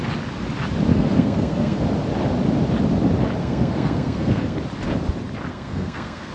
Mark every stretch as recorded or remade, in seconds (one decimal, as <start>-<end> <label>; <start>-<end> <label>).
0.0-0.9 recorded; 0.9-1.8 remade; 1.8-3.4 recorded; 3.4-4.6 remade; 4.6-5.5 recorded; 5.5-6.3 remade